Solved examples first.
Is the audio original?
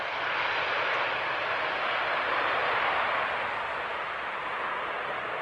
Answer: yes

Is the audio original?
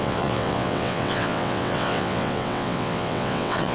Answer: no